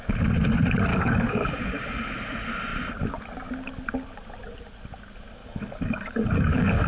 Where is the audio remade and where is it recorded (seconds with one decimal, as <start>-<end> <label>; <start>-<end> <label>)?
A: 0.0-0.9 recorded; 0.9-1.5 remade; 1.5-5.4 recorded; 5.4-6.9 remade